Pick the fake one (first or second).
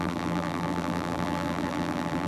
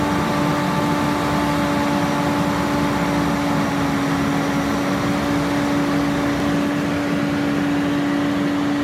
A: first